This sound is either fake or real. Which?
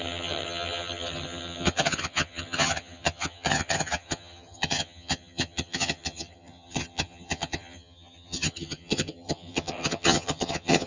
fake